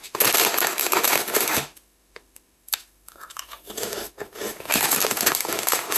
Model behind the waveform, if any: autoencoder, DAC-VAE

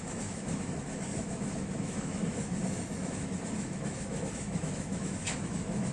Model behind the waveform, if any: autoencoder, DAC-VAE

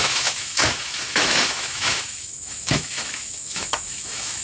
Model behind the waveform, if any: autoencoder, DAC-VAE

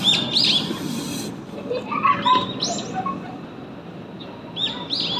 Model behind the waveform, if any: none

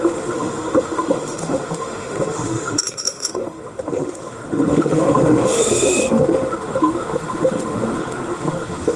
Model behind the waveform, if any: autoencoder, DAC-VAE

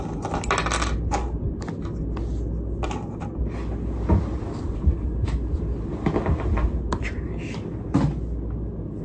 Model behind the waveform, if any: none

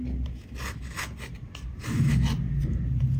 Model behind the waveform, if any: none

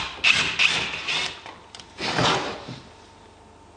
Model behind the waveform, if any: none